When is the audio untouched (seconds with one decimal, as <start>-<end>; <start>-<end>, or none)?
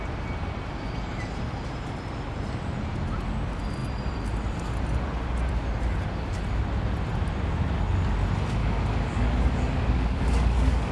0.0-8.6